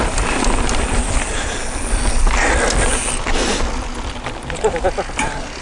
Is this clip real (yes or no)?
yes